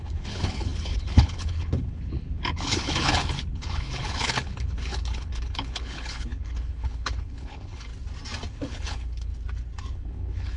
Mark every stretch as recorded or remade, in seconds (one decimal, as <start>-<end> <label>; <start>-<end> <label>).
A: 0.0-7.9 remade; 7.9-8.5 recorded; 8.5-9.3 remade; 9.3-9.9 recorded; 9.9-10.6 remade